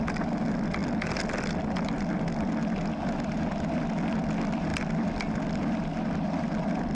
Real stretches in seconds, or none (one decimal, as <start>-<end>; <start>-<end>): 0.0-6.9